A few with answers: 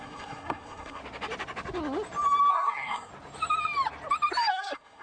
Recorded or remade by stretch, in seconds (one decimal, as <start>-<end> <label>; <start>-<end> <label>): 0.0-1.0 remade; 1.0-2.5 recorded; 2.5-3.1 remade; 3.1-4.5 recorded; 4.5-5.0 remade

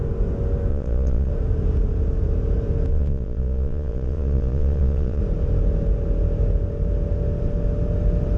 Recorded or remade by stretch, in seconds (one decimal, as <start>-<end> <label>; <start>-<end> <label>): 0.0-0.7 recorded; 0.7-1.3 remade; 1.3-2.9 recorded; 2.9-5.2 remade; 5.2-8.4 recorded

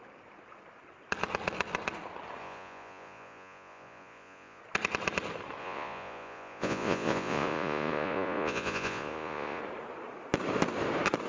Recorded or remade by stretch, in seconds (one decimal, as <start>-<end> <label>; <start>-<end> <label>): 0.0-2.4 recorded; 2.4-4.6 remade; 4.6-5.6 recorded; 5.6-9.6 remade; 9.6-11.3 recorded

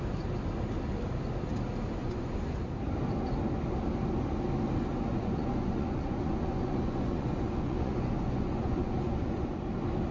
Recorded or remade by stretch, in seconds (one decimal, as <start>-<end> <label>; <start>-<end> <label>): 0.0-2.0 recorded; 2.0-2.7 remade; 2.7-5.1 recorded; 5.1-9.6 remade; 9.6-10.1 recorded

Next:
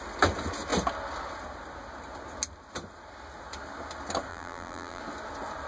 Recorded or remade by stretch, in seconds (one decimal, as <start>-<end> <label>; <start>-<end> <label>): 0.0-4.3 recorded; 4.3-5.0 remade; 5.0-5.7 recorded

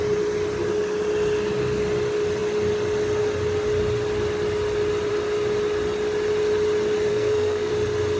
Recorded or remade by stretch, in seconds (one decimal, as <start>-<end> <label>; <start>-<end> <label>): 0.0-7.1 recorded; 7.1-7.7 remade; 7.7-8.2 recorded

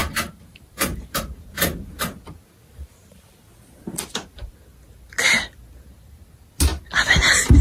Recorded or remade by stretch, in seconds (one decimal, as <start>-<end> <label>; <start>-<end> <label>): 0.0-1.2 remade; 1.2-7.6 recorded